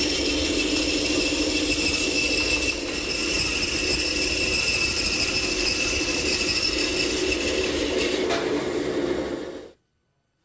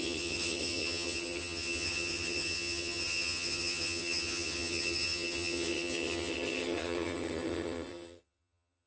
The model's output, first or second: second